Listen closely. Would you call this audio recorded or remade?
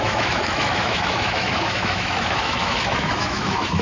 remade